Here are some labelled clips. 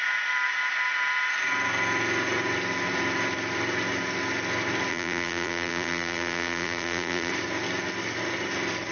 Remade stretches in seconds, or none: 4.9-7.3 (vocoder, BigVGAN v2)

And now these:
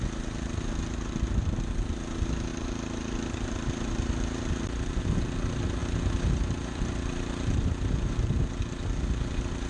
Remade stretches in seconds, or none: 2.5-5.0 (vocoder, BigVGAN v2)